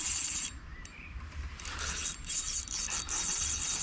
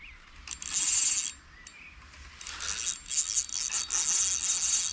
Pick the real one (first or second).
second